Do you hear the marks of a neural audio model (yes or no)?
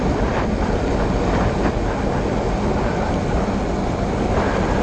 no